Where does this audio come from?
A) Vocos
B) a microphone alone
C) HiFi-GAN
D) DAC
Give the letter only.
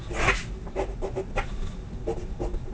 B